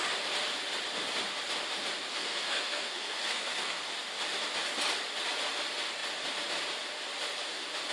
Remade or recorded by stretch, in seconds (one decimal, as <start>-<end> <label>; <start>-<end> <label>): 0.0-2.1 recorded; 2.1-3.8 remade; 3.8-7.9 recorded